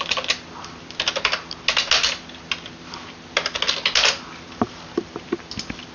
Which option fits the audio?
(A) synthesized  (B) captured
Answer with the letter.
B